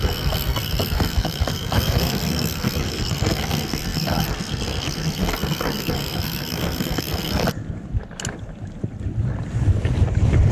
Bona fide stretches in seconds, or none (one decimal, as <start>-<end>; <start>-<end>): 7.4-10.5